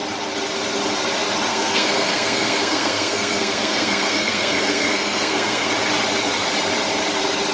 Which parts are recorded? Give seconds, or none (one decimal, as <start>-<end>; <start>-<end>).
0.0-1.5; 5.7-7.5

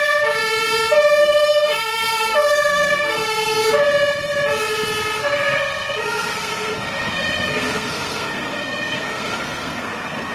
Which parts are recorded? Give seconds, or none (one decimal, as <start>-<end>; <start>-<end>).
0.0-1.2; 3.7-5.2

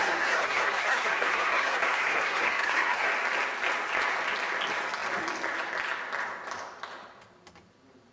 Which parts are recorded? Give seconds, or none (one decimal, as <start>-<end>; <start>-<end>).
3.1-8.1

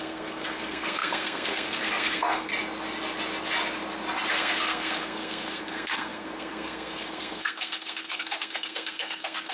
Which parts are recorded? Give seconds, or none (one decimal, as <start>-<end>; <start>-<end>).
2.5-4.3

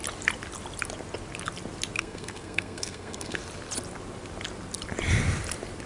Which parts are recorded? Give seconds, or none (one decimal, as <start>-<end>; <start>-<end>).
0.0-2.0; 3.4-5.9

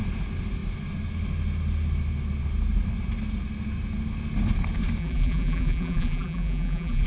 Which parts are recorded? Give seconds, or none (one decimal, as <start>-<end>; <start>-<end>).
0.0-5.0